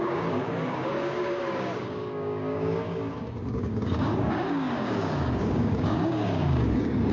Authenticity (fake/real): fake